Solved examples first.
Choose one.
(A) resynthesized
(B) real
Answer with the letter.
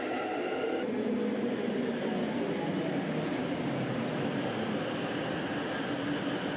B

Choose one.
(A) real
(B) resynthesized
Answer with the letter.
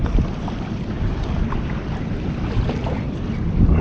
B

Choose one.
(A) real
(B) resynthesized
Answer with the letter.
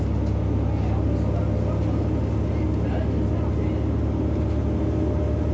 A